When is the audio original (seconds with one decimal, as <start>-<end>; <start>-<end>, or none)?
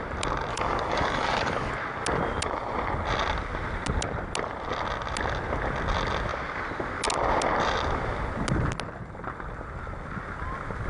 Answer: 0.0-0.5; 1.7-10.9